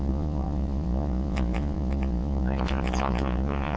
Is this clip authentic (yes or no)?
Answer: no